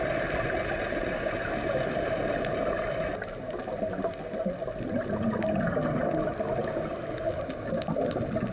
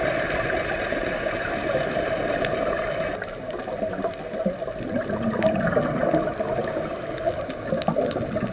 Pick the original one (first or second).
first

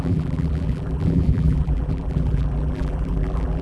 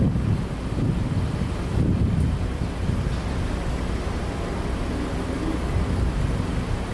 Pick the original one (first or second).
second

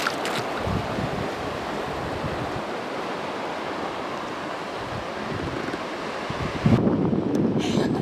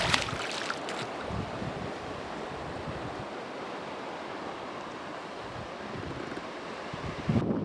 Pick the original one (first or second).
first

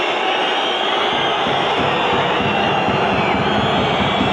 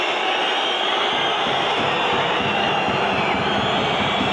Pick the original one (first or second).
first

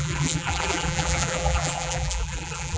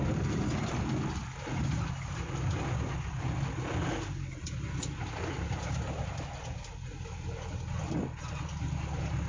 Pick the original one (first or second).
second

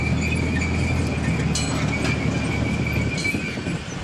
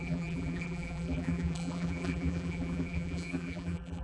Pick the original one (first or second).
first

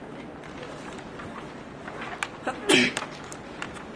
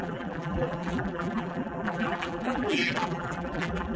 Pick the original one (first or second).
first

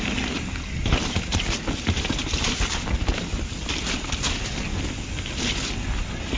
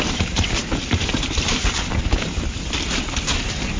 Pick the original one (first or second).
first